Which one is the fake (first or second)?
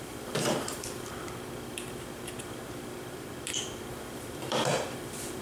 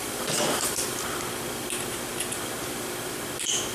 first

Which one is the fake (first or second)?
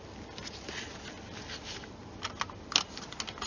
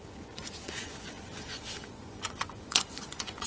second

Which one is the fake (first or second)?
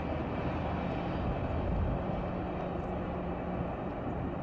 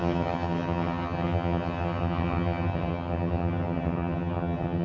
second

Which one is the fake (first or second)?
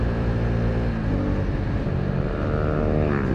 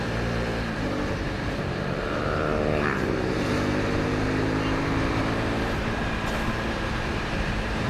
second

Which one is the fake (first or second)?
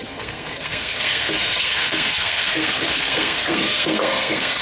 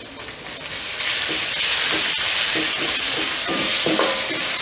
first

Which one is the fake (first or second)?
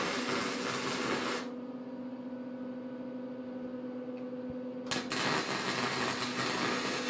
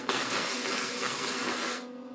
second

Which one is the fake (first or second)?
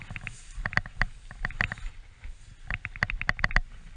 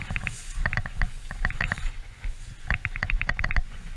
second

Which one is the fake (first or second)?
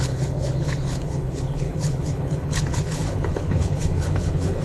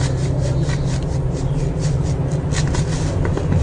first